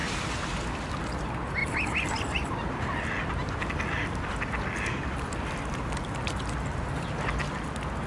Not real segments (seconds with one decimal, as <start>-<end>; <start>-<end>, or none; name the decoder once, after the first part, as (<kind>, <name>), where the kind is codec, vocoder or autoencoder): 1.6-2.5 (vocoder, BigVGAN v2); 3.6-5.6